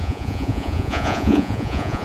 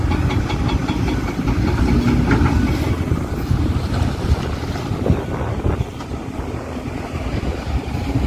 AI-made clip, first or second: first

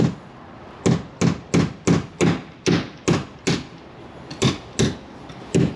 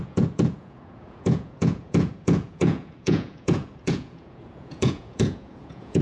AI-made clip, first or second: second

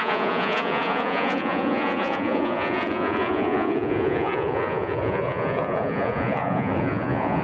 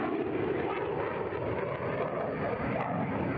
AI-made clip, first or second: first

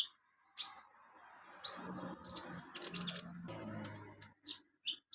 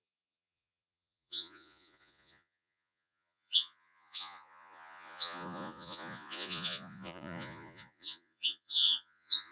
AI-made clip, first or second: second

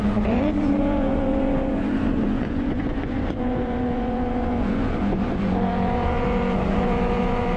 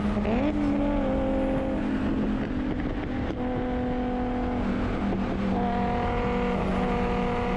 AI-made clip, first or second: first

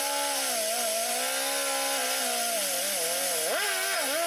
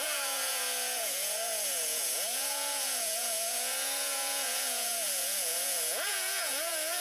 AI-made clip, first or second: second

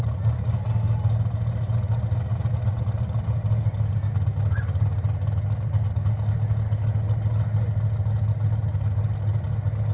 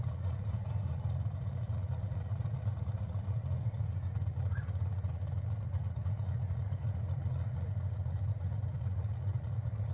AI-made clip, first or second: second